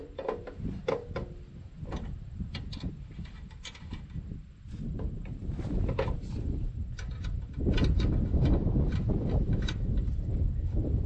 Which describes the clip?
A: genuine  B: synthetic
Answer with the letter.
A